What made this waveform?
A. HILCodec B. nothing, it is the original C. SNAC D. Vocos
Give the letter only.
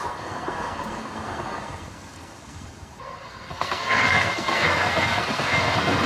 C